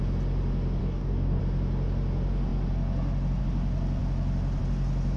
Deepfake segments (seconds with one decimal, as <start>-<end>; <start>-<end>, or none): 0.8-1.4